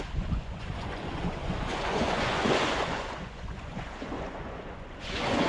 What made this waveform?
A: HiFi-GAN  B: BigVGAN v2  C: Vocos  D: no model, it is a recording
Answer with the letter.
C